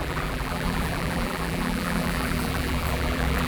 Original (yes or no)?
no